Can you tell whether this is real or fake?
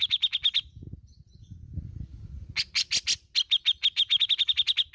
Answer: real